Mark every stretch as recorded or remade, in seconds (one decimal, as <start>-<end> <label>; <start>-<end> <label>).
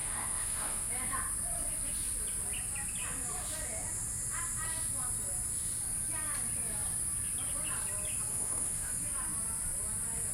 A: 0.0-0.9 remade; 0.9-8.3 recorded; 8.3-8.9 remade; 8.9-10.3 recorded